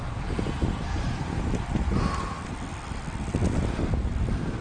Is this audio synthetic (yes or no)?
no